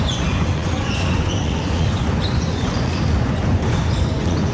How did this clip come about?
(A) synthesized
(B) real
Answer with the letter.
A